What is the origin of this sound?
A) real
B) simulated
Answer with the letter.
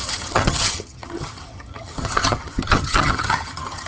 B